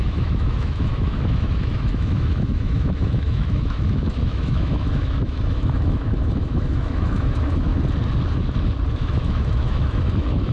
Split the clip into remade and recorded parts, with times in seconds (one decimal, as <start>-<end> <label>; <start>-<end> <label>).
0.0-7.7 remade; 7.7-8.9 recorded; 8.9-10.5 remade